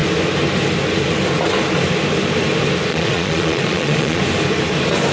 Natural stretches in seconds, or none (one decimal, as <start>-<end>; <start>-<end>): 0.0-2.9; 4.2-5.1